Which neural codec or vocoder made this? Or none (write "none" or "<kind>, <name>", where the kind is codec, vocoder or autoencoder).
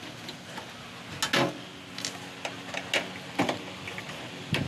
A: none